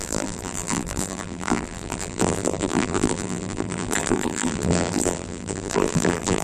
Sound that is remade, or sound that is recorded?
remade